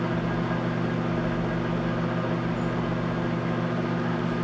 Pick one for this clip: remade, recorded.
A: recorded